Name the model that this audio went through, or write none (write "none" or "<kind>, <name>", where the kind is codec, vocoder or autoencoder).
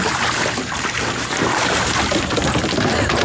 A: none